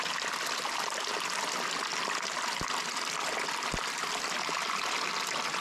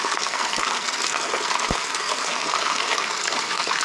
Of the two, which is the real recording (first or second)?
first